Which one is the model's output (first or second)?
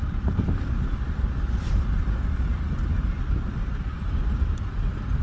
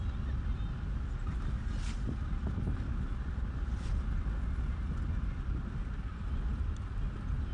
first